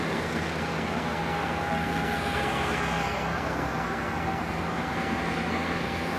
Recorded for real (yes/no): no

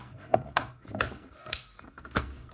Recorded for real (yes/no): no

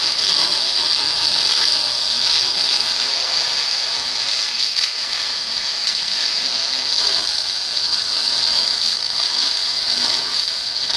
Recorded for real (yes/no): no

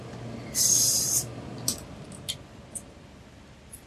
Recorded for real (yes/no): yes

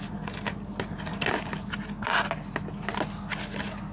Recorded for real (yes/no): yes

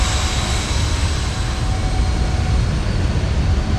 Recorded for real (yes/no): yes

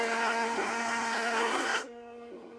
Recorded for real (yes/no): no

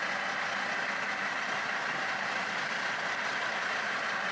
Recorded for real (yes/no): yes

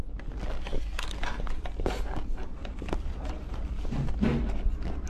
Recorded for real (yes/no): yes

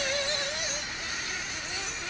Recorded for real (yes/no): yes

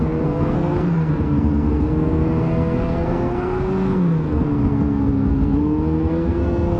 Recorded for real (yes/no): no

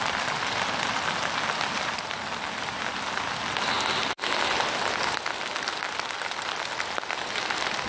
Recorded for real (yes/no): yes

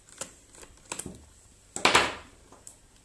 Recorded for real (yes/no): yes